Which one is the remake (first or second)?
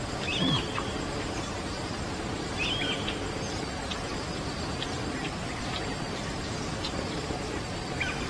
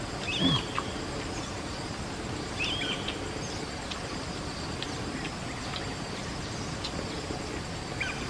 first